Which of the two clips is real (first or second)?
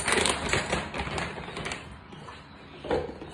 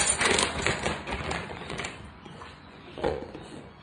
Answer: first